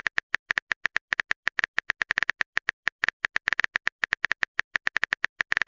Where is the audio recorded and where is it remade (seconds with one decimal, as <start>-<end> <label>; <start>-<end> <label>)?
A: 0.0-5.7 recorded